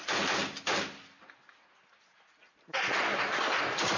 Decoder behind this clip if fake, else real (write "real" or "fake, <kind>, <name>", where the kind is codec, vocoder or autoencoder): real